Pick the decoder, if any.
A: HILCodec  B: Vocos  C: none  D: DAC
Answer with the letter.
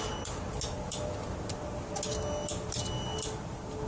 C